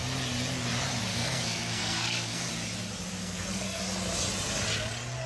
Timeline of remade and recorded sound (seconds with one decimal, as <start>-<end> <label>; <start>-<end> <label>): 0.0-1.1 recorded; 1.1-2.5 remade; 2.5-3.2 recorded; 3.2-3.8 remade; 3.8-5.3 recorded